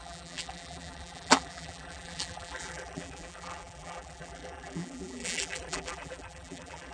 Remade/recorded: remade